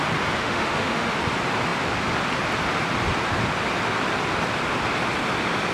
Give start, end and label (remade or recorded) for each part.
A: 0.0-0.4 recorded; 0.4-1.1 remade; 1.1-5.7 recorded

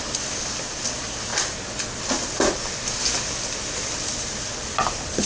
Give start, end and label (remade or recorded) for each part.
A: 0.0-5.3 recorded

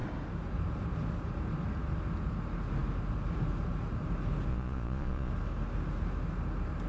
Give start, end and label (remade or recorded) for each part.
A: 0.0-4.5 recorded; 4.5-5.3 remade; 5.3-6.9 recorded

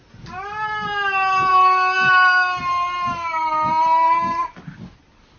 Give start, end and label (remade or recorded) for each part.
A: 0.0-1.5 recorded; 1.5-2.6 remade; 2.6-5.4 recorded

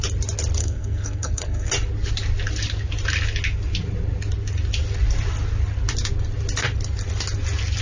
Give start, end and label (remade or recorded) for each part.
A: 0.0-0.6 recorded; 0.6-1.7 remade; 1.7-7.8 recorded

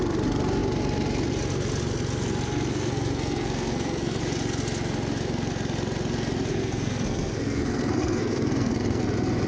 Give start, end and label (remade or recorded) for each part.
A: 0.0-2.7 recorded; 2.7-4.2 remade; 4.2-6.5 recorded; 6.5-9.0 remade; 9.0-9.5 recorded

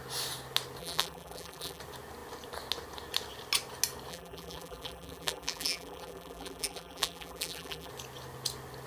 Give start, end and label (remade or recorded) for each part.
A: 0.0-0.8 recorded; 0.8-1.8 remade; 1.8-4.1 recorded; 4.1-7.9 remade; 7.9-8.9 recorded

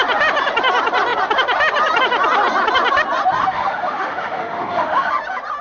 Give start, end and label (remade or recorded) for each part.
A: 0.0-3.4 recorded; 3.4-5.1 remade; 5.1-5.6 recorded